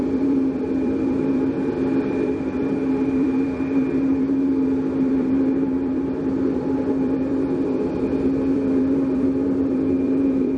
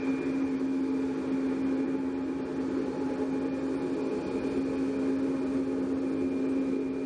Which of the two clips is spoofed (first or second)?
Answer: first